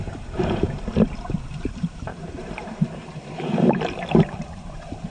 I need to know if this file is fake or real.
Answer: fake